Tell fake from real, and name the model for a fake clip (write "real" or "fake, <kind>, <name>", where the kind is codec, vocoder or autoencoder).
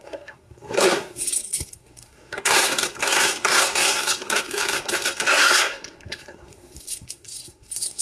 fake, codec, SNAC